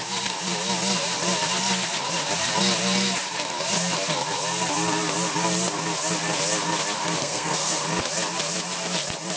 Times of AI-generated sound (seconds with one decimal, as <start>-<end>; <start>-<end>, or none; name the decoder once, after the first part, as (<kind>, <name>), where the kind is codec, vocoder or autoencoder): 7.2-7.8 (codec, SNAC)